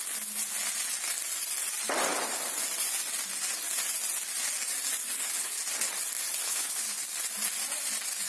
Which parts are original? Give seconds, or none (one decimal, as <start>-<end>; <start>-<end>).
0.0-5.0; 5.6-6.4; 7.0-8.3